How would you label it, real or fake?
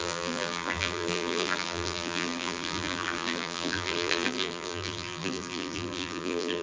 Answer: fake